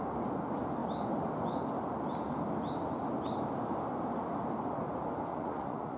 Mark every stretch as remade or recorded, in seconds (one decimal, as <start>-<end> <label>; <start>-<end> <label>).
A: 0.0-5.3 recorded; 5.3-6.0 remade